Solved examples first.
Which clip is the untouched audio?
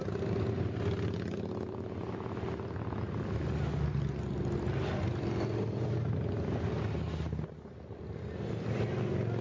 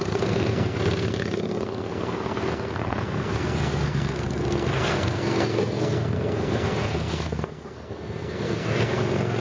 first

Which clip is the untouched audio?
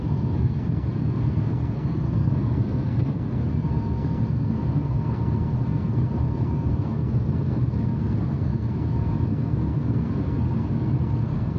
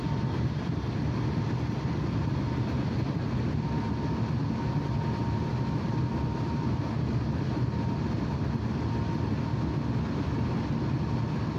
second